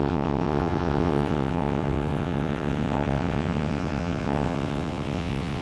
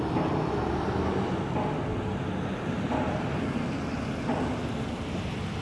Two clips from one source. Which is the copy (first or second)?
first